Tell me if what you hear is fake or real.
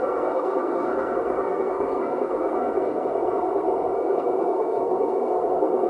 fake